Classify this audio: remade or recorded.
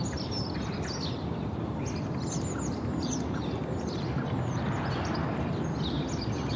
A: recorded